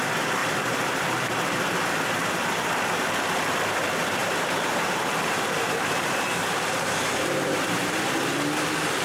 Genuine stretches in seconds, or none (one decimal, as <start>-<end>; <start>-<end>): 0.0-0.4; 2.7-4.2; 8.1-9.0